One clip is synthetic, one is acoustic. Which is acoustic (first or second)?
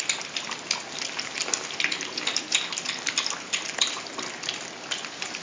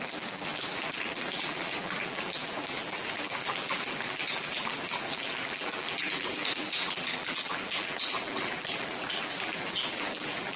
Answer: first